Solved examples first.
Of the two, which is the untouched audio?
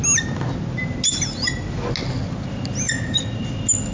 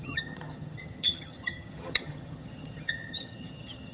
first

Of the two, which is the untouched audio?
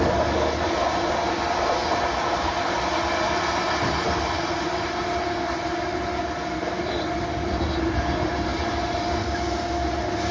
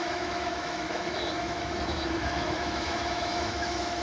first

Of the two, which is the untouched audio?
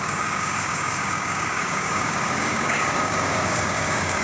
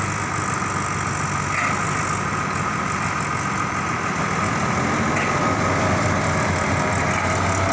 second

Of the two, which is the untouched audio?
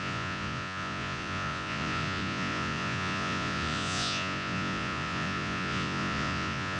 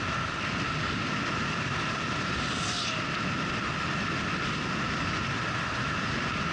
second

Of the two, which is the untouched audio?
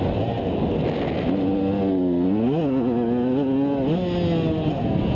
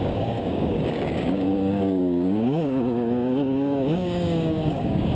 first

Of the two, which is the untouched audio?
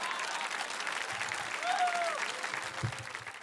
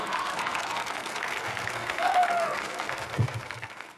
first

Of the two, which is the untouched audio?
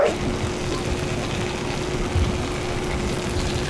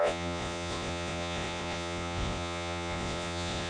first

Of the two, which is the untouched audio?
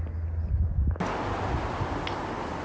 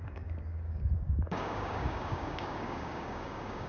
first